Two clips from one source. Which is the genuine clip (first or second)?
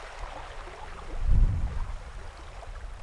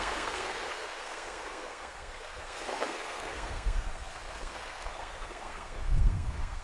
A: first